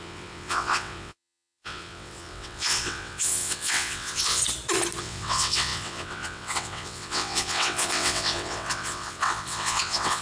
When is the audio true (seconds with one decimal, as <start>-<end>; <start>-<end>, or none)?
4.4-5.0